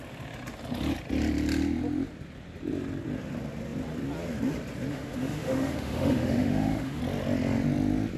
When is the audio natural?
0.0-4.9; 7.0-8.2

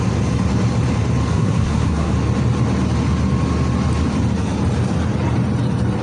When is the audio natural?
0.0-1.3; 2.1-6.0

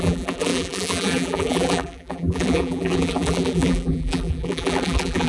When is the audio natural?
none

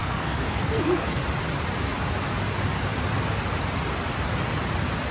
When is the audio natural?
1.2-5.1